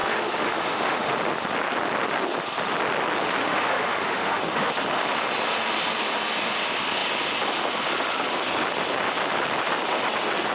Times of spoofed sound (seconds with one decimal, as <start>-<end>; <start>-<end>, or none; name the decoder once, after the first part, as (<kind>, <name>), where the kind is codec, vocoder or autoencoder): 0.0-1.1 (autoencoder, DAC-VAE); 3.4-4.7

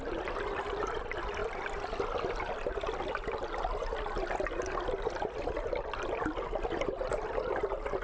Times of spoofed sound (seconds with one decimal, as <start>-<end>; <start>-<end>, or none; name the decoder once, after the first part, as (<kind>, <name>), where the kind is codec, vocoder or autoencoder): none

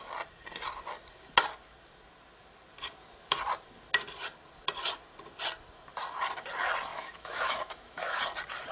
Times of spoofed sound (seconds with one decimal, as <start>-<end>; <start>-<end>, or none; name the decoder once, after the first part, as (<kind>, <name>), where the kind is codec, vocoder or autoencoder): 6.9-8.2 (autoencoder, DAC-VAE)